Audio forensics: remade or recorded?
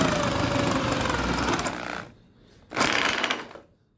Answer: recorded